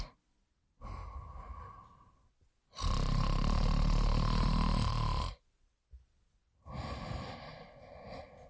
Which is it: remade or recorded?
recorded